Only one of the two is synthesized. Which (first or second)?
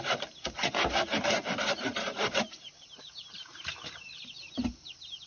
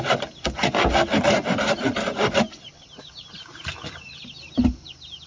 first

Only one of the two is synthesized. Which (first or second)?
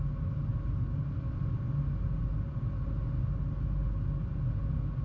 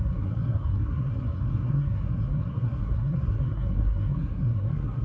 second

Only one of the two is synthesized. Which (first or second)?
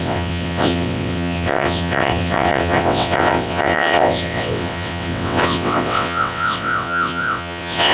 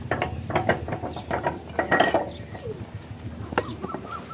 first